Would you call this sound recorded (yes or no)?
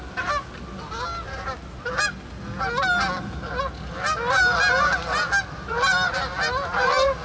yes